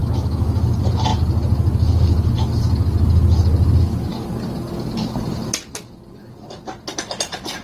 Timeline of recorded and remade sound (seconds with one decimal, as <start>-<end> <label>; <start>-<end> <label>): 0.0-0.6 remade; 0.6-7.6 recorded